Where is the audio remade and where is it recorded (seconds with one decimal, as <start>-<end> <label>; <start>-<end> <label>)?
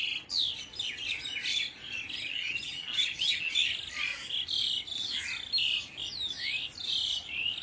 0.0-2.3 recorded; 2.3-3.5 remade; 3.5-7.6 recorded